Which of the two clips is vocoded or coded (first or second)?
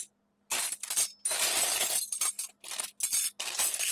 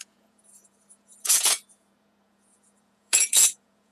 second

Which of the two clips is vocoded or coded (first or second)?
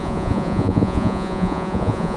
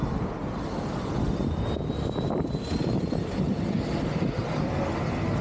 first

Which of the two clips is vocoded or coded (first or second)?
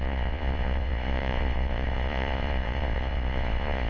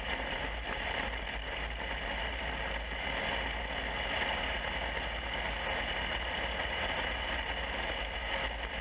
first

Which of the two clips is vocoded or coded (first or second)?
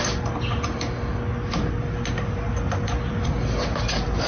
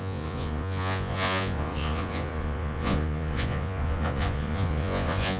second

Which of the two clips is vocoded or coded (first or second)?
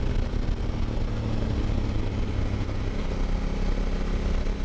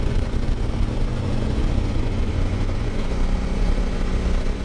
second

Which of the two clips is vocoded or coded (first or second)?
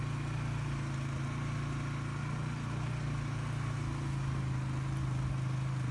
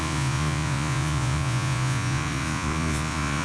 second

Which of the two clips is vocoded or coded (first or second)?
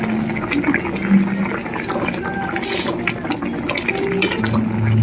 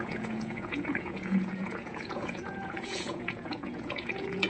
second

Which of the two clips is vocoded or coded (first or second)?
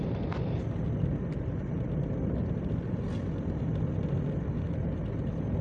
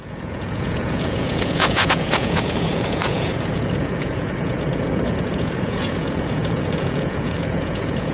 second